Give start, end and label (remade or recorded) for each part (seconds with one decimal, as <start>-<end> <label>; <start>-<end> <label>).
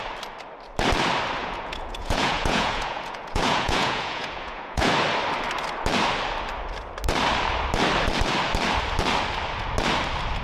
0.0-1.4 recorded; 1.4-4.9 remade; 4.9-10.4 recorded